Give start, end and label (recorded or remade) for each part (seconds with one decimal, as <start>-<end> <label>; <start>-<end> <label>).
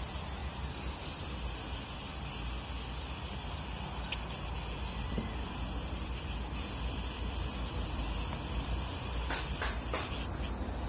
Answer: 0.0-10.9 recorded